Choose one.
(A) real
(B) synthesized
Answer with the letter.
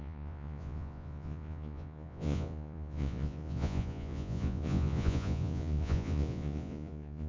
B